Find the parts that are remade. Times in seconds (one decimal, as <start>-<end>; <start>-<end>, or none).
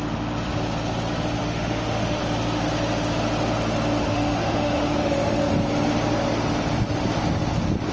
1.4-2.2; 4.1-5.5